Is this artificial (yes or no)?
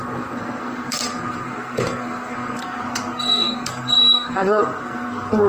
yes